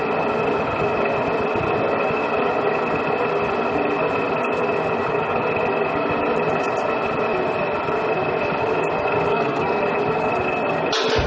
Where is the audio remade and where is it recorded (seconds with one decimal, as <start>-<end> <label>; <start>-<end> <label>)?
0.0-9.3 recorded; 9.3-9.8 remade; 9.8-11.3 recorded